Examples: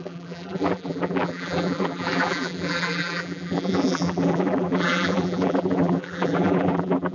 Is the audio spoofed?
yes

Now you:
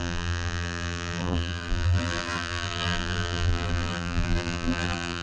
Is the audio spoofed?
yes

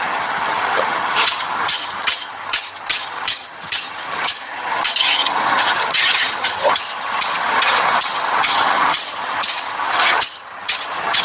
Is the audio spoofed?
yes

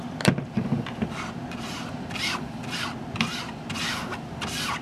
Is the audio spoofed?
yes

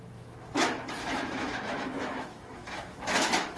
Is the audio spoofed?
yes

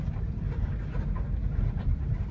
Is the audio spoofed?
no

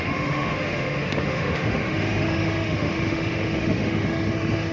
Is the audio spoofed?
yes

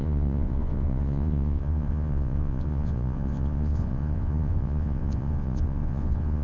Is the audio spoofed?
yes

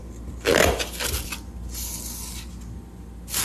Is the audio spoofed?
no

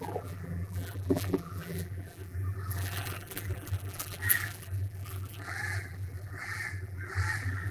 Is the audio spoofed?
yes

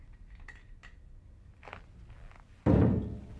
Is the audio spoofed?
no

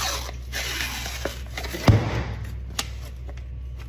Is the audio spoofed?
no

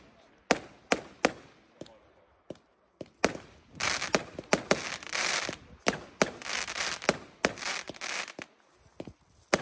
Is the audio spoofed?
no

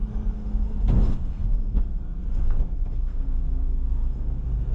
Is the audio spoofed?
yes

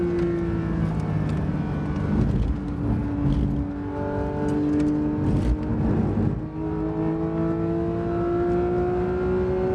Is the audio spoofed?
no